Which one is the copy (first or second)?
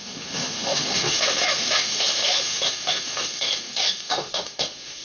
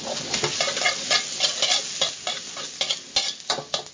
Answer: first